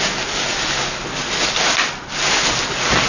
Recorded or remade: recorded